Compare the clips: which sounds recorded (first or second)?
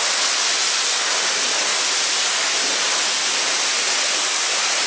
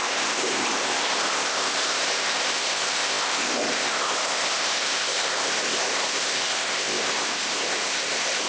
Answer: first